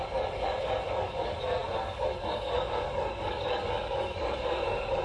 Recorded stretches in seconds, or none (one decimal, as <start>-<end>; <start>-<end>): none